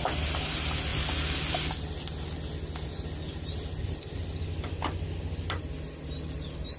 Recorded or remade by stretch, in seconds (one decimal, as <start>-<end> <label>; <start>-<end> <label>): 0.0-6.8 recorded